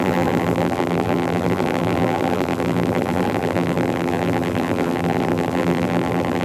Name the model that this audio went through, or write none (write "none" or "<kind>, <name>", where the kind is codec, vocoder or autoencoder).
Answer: vocoder, BigVGAN v2